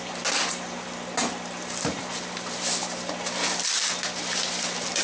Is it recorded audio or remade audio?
recorded